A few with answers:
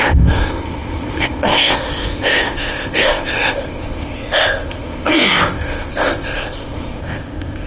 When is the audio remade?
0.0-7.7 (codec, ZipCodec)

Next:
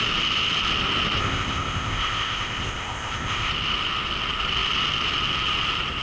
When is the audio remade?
1.2-3.5 (codec, ZipCodec)

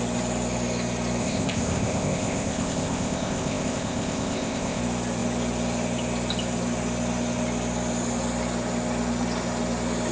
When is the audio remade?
1.2-4.8 (codec, ZipCodec)

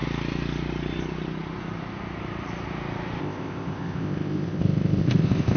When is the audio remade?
3.2-5.6 (codec, ZipCodec)